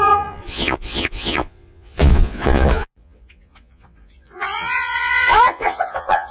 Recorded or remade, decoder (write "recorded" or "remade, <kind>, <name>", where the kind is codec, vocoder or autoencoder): remade, vocoder, Vocos